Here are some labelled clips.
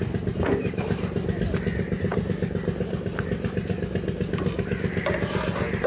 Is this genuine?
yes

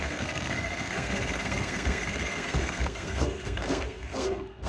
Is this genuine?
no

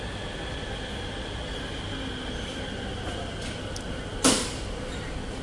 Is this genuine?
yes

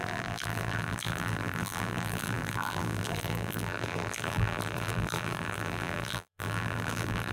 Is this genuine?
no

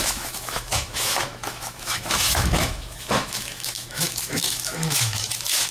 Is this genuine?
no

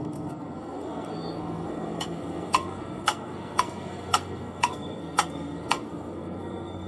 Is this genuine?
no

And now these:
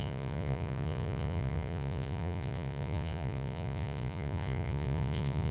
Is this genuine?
no